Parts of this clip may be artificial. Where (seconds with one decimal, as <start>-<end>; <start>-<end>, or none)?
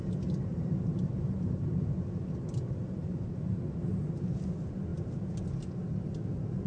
0.9-1.7; 3.0-3.6; 4.9-5.7